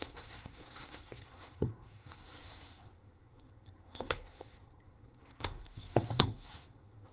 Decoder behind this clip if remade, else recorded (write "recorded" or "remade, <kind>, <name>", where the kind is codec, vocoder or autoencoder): remade, codec, SNAC